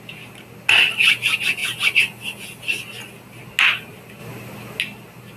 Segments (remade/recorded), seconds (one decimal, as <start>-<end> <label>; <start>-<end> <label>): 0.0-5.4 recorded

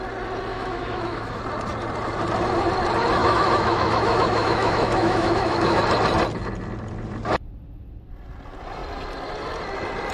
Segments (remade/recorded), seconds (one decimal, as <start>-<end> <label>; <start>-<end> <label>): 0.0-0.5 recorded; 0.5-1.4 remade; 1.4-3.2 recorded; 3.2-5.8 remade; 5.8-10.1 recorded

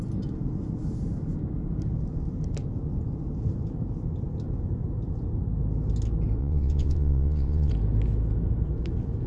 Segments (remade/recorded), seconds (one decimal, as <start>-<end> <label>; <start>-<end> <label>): 0.0-6.4 recorded; 6.4-7.7 remade; 7.7-9.3 recorded

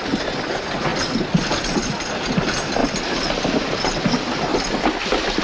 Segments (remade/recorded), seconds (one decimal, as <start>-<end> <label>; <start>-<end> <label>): 0.0-0.9 recorded; 0.9-2.1 remade; 2.1-2.8 recorded; 2.8-3.7 remade; 3.7-4.5 recorded; 4.5-5.4 remade

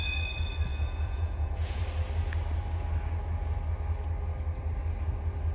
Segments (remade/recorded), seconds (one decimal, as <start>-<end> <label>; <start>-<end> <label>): 0.0-0.7 recorded; 0.7-1.8 remade; 1.8-5.5 recorded

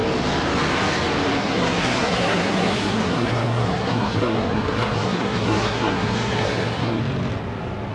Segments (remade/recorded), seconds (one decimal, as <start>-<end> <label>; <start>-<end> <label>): 0.0-1.4 recorded; 1.4-7.0 remade; 7.0-7.9 recorded